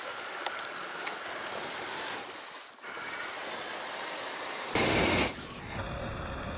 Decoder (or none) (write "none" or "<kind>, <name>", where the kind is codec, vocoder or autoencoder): none